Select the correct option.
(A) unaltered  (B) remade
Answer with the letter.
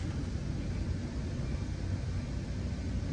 A